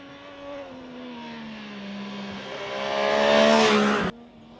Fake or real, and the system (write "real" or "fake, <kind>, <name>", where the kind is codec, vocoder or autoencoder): real